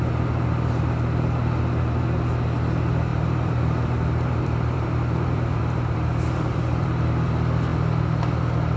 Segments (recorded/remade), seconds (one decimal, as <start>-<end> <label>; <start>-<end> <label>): 0.0-3.1 recorded; 3.1-7.3 remade; 7.3-8.8 recorded